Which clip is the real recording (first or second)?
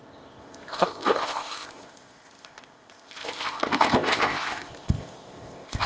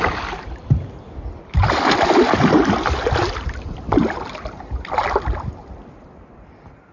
second